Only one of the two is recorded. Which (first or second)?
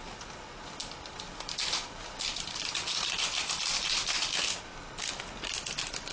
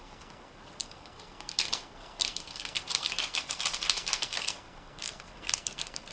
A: first